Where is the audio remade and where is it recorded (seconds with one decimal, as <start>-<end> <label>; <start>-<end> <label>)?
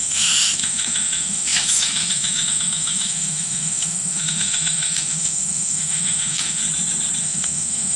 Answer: 0.0-6.6 remade; 6.6-7.2 recorded; 7.2-8.0 remade